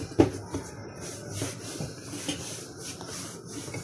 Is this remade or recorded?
recorded